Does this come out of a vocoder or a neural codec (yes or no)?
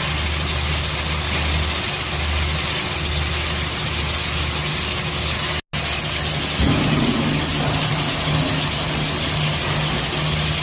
no